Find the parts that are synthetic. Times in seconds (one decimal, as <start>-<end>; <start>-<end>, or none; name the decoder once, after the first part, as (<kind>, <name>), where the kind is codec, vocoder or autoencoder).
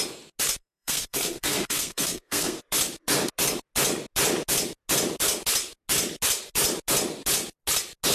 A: 0.6-2.6 (codec, SNAC)